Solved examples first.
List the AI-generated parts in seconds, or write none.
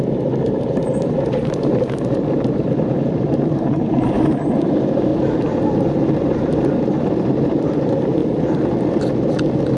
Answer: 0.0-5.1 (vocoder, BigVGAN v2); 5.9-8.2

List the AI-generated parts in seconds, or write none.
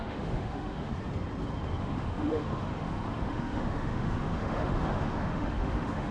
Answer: 0.0-0.9 (autoencoder, DAC-VAE); 1.8-6.1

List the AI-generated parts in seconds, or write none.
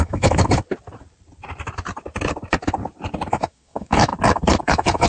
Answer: 0.0-0.6 (autoencoder, DAC-VAE); 3.3-4.1; 4.6-5.1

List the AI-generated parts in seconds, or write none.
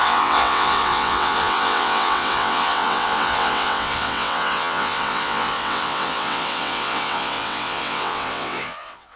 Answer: 0.0-9.2 (vocoder, WaveNeXt)